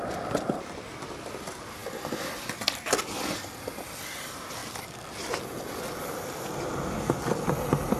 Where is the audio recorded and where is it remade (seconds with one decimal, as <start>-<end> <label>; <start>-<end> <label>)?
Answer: 0.0-8.0 recorded